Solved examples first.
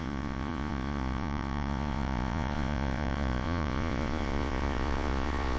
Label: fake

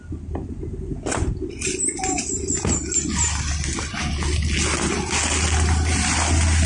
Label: real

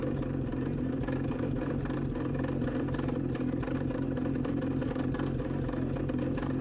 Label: fake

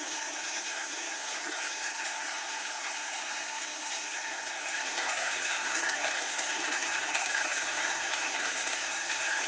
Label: fake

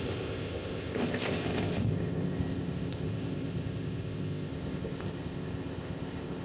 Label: fake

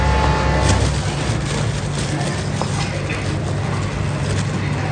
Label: real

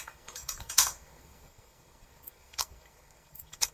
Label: fake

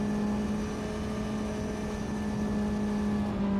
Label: real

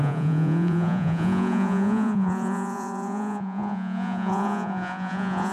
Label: fake